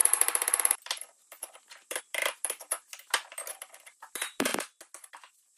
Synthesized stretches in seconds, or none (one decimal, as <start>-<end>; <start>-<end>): 0.0-4.5; 5.1-5.6